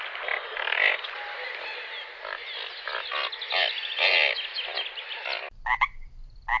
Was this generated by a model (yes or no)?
no